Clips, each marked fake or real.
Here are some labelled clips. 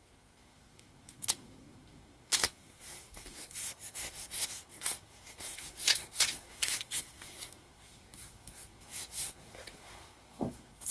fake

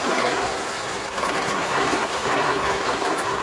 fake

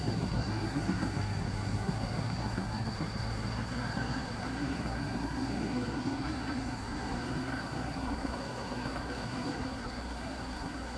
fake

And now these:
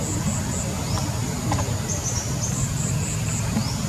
real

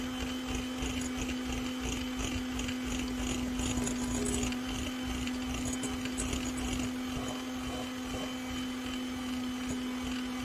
real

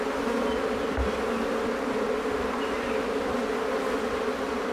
real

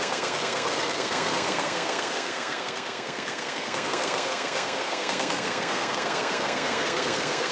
fake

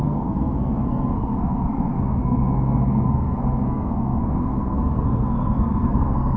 fake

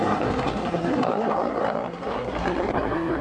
fake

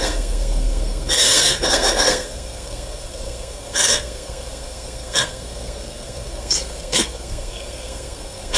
fake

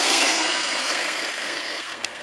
fake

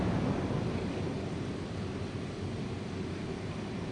real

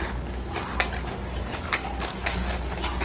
real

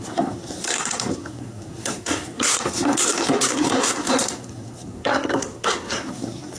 fake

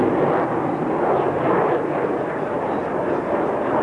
real